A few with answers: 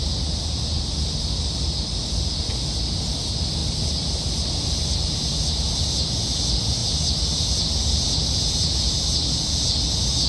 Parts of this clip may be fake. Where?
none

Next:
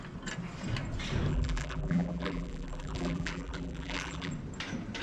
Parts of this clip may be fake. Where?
1.3-4.3 (vocoder, BigVGAN v2)

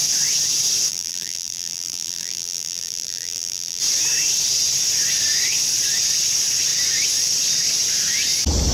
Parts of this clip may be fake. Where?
0.9-3.8 (vocoder, BigVGAN v2)

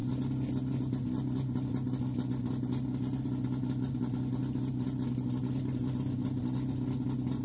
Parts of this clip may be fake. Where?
none

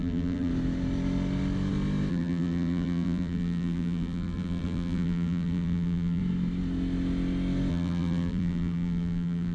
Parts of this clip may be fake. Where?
0.0-0.5 (vocoder, BigVGAN v2); 2.1-6.2; 7.7-9.5